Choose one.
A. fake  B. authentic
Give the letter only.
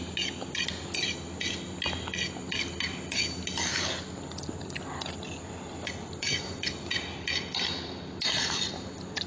B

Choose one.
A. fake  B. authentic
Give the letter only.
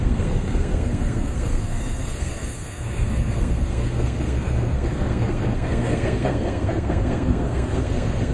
A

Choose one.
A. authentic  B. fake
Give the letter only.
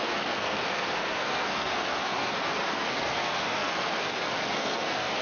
B